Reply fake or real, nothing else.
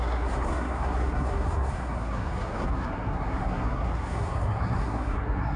fake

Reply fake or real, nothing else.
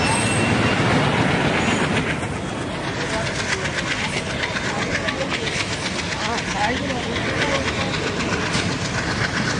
real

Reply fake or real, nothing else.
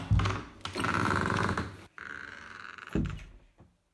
real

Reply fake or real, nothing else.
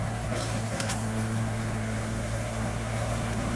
fake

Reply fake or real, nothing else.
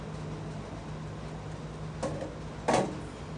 real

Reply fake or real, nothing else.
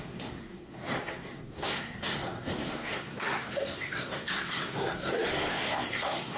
fake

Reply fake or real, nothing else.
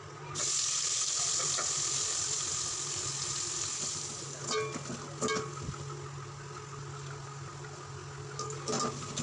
real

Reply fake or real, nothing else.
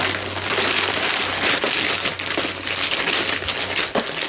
real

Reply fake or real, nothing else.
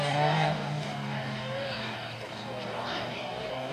fake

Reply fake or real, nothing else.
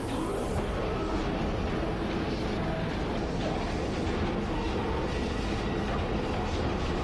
real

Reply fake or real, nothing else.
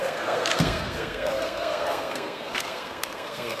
fake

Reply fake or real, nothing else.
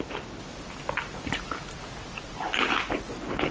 real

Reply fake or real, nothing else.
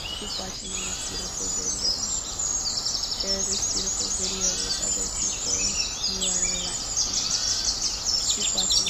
real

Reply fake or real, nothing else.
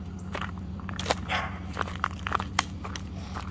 real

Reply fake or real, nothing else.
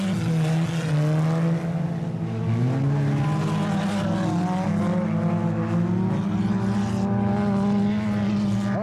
real